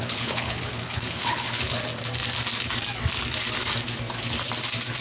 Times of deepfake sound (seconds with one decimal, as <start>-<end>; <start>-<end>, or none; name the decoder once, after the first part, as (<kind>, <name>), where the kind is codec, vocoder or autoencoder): 0.0-1.8 (codec, HILCodec)